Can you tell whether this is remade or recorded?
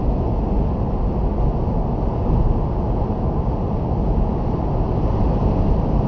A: recorded